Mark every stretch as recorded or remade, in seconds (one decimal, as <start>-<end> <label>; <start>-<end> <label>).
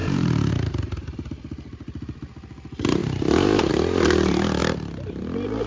0.0-0.5 remade; 0.5-3.0 recorded; 3.0-3.7 remade; 3.7-4.6 recorded; 4.6-5.2 remade; 5.2-5.7 recorded